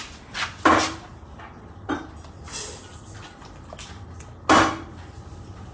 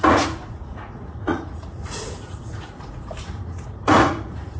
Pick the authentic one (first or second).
first